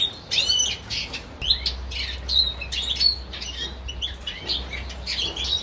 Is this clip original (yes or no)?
yes